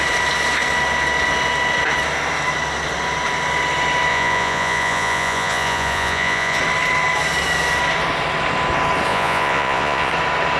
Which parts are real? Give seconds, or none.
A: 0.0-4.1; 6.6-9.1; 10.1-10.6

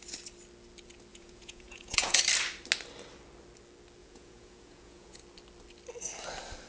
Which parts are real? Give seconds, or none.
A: 0.0-1.1; 2.2-4.0; 5.2-6.7

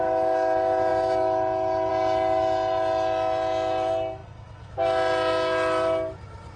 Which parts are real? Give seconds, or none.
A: 0.0-6.6